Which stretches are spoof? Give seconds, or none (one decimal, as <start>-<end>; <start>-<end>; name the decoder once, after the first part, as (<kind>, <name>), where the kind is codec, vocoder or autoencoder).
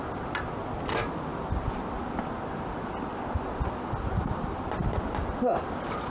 none